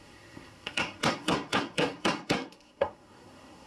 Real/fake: fake